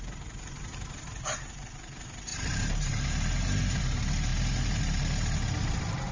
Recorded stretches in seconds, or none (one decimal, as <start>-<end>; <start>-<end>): 0.0-6.1